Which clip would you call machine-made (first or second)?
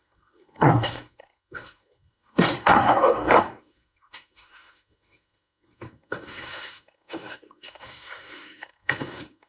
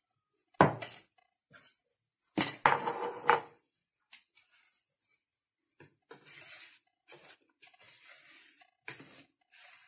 first